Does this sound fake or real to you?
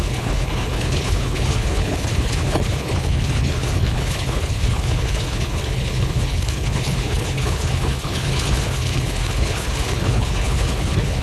fake